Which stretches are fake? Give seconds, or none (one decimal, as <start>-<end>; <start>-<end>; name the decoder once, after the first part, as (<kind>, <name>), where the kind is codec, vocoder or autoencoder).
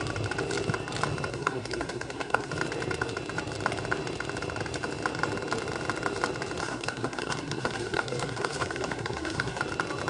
1.3-2.5 (codec, SNAC); 6.6-9.6